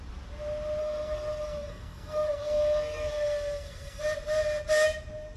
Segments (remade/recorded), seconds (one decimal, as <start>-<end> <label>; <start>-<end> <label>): 0.0-0.8 recorded; 0.8-4.0 remade; 4.0-5.4 recorded